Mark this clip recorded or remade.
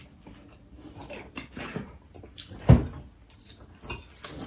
recorded